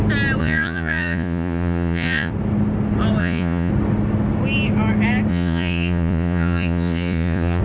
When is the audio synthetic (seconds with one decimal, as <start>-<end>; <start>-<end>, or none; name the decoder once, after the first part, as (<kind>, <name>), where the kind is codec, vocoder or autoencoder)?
0.4-2.3 (vocoder, Vocos); 3.2-3.7; 5.3-7.6

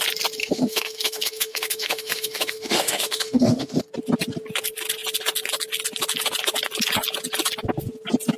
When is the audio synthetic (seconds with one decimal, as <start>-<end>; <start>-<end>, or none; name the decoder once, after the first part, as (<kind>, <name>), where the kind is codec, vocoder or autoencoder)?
0.4-3.8 (autoencoder, DAC-VAE)

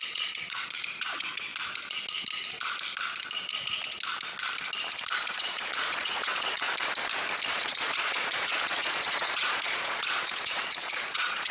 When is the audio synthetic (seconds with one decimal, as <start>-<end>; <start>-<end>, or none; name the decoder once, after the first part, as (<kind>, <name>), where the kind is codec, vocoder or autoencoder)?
0.0-1.5 (vocoder, Vocos); 5.4-6.7; 7.5-11.5

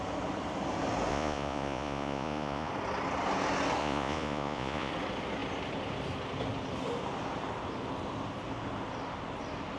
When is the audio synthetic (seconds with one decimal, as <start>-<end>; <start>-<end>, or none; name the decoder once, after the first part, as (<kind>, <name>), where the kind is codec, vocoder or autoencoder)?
1.1-2.7 (vocoder, Vocos); 3.8-4.9

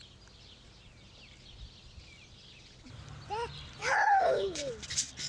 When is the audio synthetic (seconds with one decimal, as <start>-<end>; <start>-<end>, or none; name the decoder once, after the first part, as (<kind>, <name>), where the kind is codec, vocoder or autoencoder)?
3.8-4.7 (codec, HILCodec)